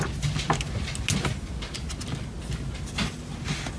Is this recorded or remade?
recorded